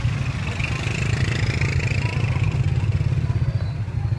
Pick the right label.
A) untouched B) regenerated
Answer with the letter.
A